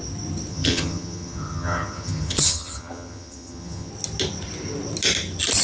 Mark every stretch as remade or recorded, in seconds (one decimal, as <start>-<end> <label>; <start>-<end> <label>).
0.0-0.5 recorded; 0.5-3.9 remade; 3.9-5.6 recorded